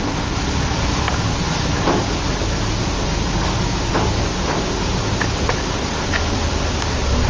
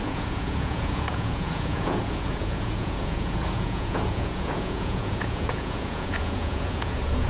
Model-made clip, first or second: second